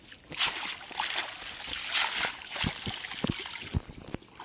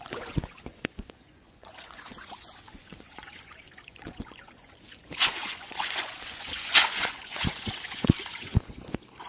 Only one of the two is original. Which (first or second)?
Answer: first